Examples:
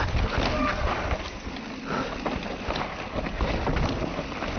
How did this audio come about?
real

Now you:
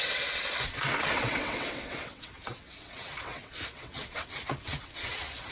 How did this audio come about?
fake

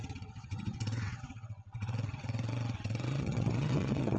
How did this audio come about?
fake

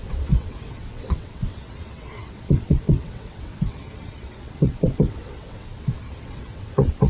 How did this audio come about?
fake